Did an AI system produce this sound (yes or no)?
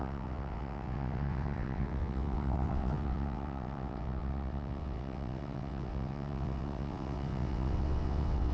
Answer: yes